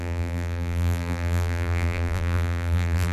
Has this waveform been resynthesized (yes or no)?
yes